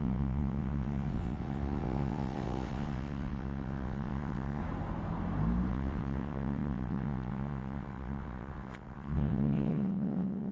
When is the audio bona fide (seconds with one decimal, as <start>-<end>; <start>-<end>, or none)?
4.6-5.7